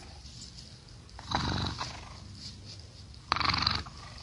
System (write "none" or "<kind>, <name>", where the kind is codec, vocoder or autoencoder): none